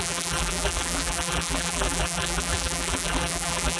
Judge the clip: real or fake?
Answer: fake